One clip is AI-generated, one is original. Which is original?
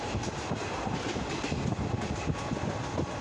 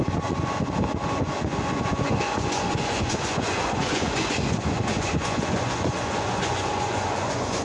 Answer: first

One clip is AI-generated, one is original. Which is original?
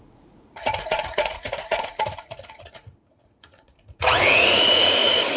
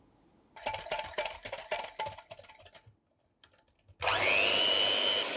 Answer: second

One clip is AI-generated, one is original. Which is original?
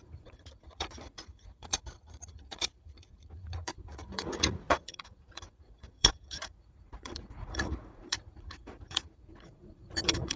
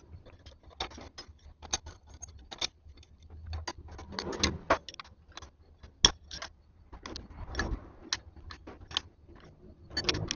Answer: second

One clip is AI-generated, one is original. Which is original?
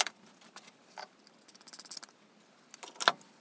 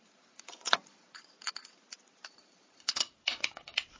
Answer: first